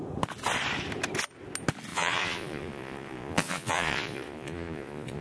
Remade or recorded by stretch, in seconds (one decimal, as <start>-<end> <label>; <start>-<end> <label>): 0.0-1.9 recorded; 1.9-5.2 remade